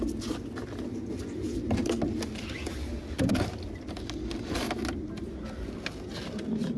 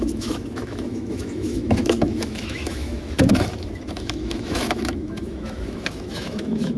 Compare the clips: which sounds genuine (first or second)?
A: first